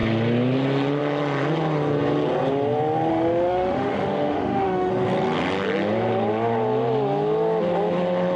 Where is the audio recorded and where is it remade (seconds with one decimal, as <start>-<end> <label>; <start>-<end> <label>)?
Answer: 0.0-3.1 recorded; 3.1-4.9 remade; 4.9-8.4 recorded